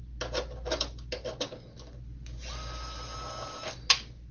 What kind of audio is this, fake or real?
real